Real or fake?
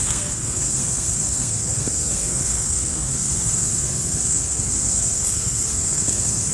fake